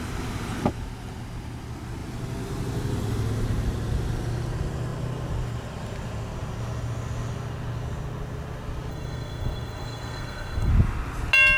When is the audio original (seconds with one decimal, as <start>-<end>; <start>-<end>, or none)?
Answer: 0.0-8.9; 10.7-11.6

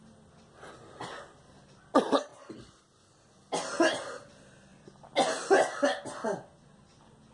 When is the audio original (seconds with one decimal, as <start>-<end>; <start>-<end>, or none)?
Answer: 0.0-7.3

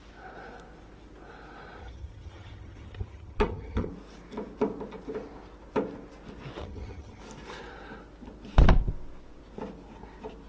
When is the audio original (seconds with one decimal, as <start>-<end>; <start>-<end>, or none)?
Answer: 0.0-1.8; 3.9-6.6; 7.2-10.5

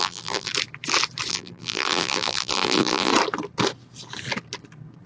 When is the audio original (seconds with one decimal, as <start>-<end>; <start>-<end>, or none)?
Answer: 0.5-1.3; 3.1-5.1

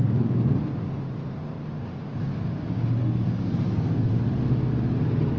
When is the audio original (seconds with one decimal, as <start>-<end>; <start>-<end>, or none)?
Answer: 0.0-3.0; 4.1-5.4